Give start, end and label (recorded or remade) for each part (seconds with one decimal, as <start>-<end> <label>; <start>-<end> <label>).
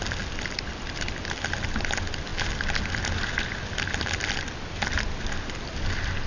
0.0-6.3 recorded